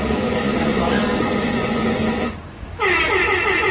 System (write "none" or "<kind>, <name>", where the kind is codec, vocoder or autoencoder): vocoder, Vocos